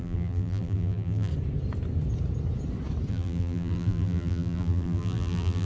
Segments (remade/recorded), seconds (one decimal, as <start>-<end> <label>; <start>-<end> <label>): 0.0-1.3 remade; 1.3-3.1 recorded; 3.1-5.6 remade